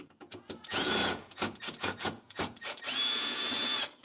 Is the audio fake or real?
fake